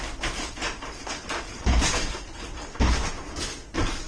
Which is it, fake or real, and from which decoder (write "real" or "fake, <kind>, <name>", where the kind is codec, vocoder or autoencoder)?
real